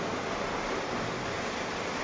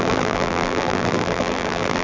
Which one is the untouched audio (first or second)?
first